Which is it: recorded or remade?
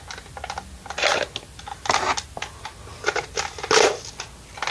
recorded